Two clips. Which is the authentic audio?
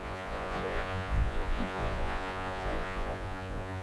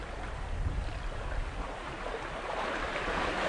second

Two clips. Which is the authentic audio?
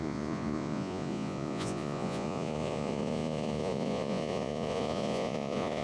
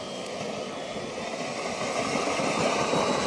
second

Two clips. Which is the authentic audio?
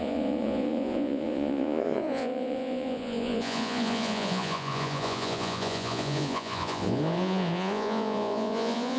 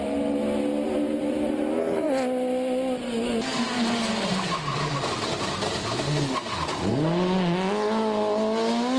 second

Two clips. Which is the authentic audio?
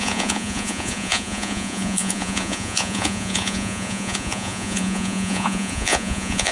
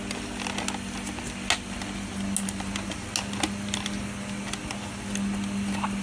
second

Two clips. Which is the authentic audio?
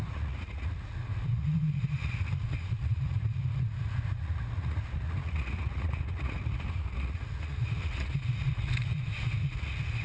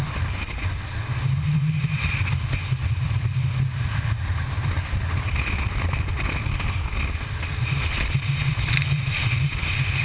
second